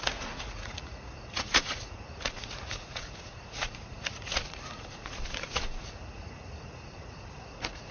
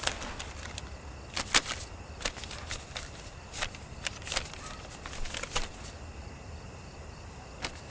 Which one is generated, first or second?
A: first